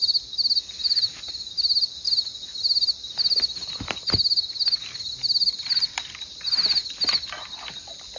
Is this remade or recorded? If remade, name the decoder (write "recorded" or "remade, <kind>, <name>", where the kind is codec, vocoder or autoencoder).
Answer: recorded